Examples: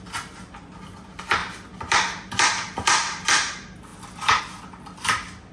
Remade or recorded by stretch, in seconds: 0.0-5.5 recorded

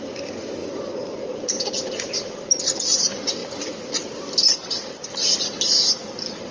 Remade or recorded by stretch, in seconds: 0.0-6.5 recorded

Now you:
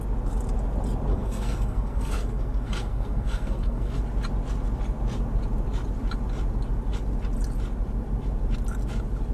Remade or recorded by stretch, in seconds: 0.0-1.1 recorded; 1.1-4.0 remade; 4.0-9.3 recorded

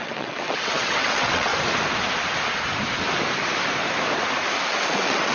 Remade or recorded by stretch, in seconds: 0.0-1.5 remade; 1.5-4.7 recorded; 4.7-5.3 remade

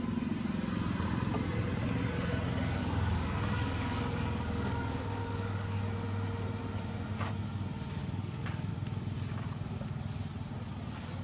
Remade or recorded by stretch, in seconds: 0.0-2.8 recorded; 2.8-5.8 remade; 5.8-8.0 recorded; 8.0-8.7 remade; 8.7-11.2 recorded